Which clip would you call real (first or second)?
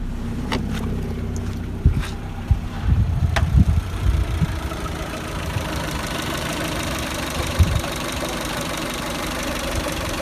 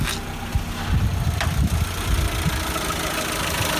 second